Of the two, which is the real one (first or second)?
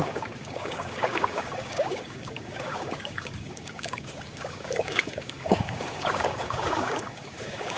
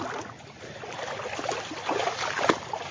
second